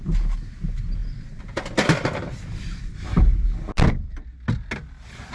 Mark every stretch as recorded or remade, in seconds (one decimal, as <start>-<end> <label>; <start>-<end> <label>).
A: 0.0-5.3 recorded